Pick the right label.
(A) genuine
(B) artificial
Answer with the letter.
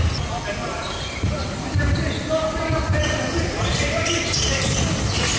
B